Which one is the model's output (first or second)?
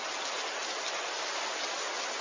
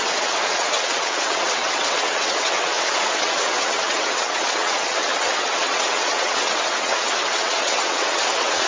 second